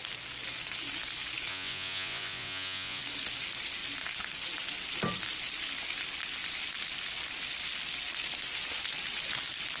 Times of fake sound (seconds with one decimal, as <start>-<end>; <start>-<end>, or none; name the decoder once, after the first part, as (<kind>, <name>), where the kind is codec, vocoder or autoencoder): 1.5-3.0 (vocoder, Vocos)